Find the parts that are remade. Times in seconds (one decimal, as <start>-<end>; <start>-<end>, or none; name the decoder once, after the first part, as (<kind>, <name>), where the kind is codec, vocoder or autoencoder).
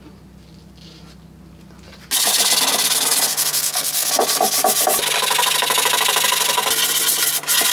3.3-4.1 (codec, SNAC)